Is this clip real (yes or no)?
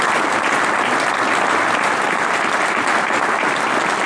yes